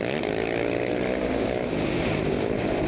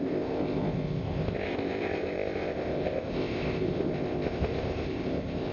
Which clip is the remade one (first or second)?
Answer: second